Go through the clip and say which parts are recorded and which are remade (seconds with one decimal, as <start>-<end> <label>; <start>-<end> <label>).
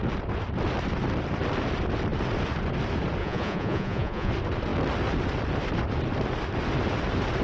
0.0-3.2 recorded; 3.2-4.3 remade; 4.3-7.4 recorded